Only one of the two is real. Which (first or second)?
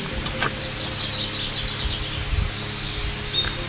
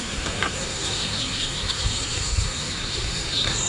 first